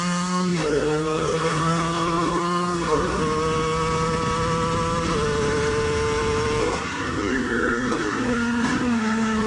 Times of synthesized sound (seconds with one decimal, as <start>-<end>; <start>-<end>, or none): 0.0-3.2; 6.6-9.5